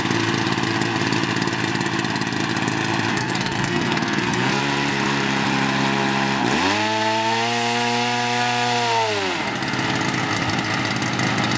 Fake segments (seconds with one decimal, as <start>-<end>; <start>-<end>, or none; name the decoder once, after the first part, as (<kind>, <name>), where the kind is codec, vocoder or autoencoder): 3.1-4.6 (codec, SNAC)